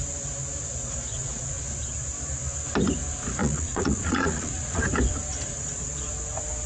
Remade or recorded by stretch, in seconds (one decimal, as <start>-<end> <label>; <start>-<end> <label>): 0.0-0.8 recorded; 0.8-1.4 remade; 1.4-3.4 recorded; 3.4-4.8 remade; 4.8-5.3 recorded; 5.3-6.1 remade; 6.1-6.7 recorded